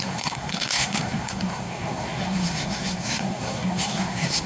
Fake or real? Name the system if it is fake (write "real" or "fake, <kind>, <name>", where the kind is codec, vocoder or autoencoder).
fake, codec, SNAC